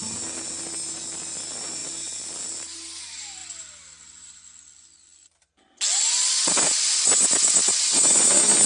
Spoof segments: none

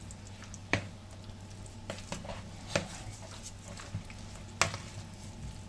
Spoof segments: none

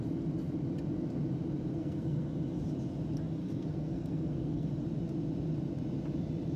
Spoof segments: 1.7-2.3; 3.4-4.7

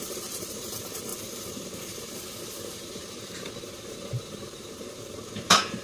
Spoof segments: 0.0-5.8